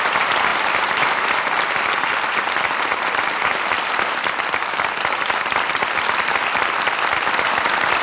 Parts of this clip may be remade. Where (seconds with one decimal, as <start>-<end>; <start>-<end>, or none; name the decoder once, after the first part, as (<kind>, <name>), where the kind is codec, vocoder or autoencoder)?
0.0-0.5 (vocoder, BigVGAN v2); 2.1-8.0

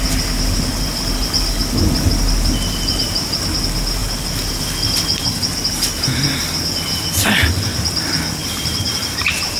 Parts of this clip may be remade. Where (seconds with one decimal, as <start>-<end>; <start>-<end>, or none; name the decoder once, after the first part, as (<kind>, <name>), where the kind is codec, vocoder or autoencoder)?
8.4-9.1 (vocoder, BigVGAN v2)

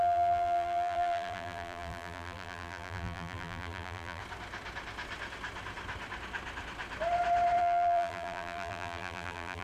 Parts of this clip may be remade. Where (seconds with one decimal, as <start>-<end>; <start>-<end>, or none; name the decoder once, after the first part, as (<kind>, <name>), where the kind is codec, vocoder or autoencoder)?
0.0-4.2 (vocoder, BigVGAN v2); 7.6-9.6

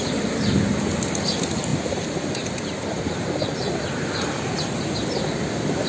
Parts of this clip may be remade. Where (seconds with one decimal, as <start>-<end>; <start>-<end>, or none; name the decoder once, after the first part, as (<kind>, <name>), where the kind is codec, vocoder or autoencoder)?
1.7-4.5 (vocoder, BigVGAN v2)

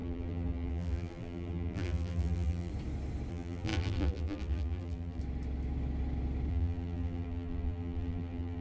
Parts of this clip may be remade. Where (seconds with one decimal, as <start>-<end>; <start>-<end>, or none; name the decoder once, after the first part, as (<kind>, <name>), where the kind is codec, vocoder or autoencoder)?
0.0-2.7 (vocoder, BigVGAN v2); 3.3-5.2; 6.5-8.6

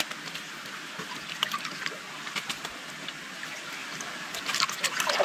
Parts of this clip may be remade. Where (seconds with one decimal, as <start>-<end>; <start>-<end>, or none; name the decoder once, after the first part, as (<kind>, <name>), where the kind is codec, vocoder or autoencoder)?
none

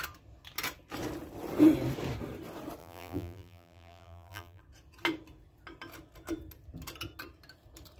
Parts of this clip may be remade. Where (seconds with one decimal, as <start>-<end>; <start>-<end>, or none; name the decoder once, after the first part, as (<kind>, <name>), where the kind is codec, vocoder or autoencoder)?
2.8-4.6 (vocoder, BigVGAN v2)

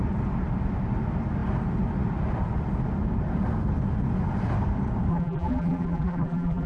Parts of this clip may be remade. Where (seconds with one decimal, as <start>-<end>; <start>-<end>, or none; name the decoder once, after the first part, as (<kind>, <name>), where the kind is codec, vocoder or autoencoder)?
5.1-6.7 (vocoder, BigVGAN v2)